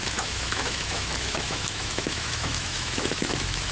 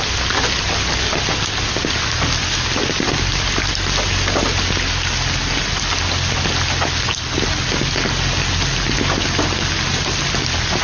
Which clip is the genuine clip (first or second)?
second